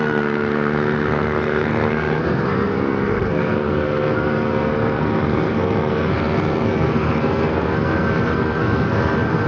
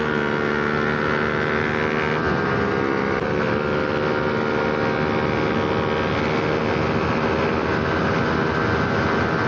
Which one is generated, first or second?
first